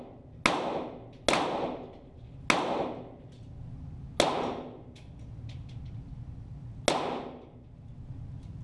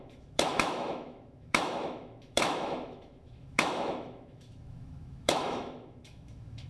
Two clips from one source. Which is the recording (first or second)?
first